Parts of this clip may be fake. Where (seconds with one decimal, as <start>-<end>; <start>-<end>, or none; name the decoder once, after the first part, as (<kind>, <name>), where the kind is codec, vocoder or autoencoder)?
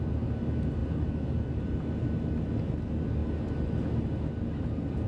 0.8-1.9 (vocoder, BigVGAN v2)